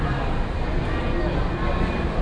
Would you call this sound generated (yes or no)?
no